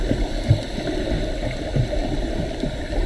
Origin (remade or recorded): recorded